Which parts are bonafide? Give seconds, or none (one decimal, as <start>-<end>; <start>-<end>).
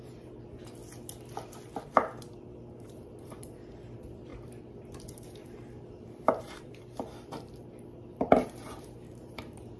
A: 0.8-2.4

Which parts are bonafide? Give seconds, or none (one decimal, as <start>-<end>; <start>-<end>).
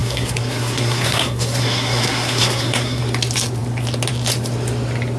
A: 3.0-5.2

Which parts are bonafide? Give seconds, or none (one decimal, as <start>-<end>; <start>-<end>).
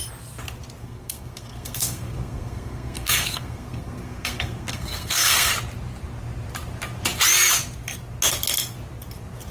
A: 0.0-0.8; 5.5-9.5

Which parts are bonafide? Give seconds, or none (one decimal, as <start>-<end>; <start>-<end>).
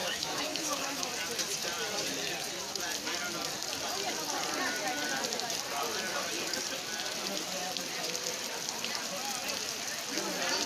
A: 1.1-10.7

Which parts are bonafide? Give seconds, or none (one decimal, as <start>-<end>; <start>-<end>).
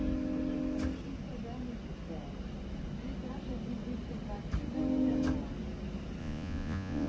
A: 0.0-6.2